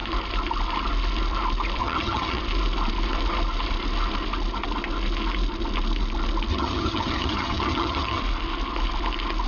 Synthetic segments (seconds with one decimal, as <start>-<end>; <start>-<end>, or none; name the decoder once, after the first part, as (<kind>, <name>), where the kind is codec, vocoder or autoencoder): 1.8-2.4 (vocoder, HiFi-GAN); 6.5-8.2